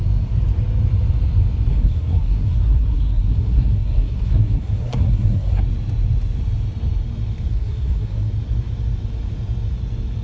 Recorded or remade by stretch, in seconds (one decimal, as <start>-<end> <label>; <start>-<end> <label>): 0.0-1.7 recorded; 1.7-5.6 remade; 5.6-7.5 recorded; 7.5-8.3 remade; 8.3-10.2 recorded